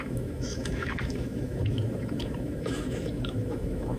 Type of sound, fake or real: fake